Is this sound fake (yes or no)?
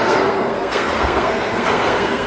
yes